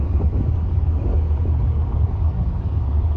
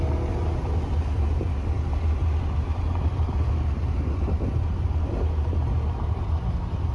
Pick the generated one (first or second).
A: first